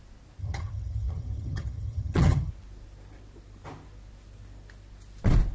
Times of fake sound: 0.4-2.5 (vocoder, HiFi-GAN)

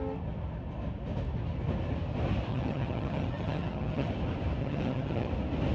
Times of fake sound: 2.5-4.1 (vocoder, HiFi-GAN); 4.6-5.3

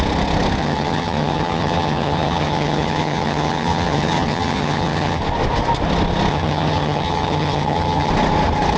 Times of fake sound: 0.6-5.2 (vocoder, HiFi-GAN); 6.3-8.1

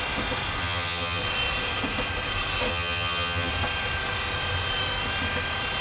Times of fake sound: 0.6-1.2 (vocoder, HiFi-GAN); 2.7-3.5

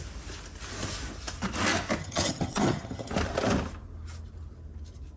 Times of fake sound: 2.0-3.1 (vocoder, HiFi-GAN)

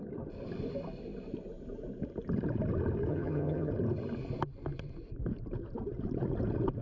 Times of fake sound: 3.1-3.7 (vocoder, HiFi-GAN)

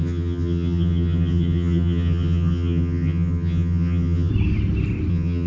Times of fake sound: 0.0-4.3 (vocoder, HiFi-GAN); 5.1-5.5

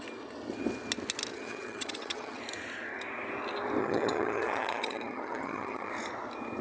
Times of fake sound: 1.3-2.4 (vocoder, HiFi-GAN); 3.8-5.9